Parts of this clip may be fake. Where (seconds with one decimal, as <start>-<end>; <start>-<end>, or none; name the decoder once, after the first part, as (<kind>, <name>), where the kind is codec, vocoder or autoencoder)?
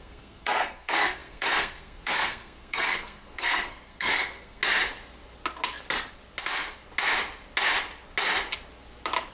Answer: 0.0-4.6 (codec, SNAC)